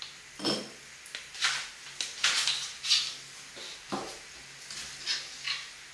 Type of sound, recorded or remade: recorded